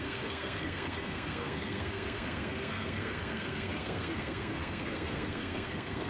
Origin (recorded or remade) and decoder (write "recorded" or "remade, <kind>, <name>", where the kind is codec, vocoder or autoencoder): remade, codec, SNAC